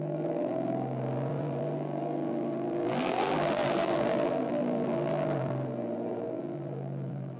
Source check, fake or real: fake